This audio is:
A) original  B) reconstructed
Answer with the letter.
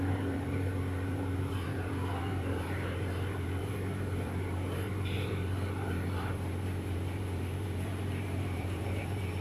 B